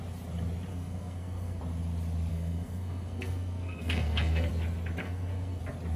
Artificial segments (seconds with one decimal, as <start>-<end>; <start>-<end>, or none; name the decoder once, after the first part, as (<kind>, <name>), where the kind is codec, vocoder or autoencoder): 0.7-1.6 (codec, SNAC); 2.3-4.5; 5.0-5.6